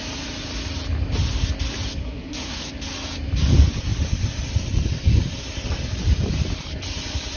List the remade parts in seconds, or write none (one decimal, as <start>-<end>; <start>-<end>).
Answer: 2.0-2.7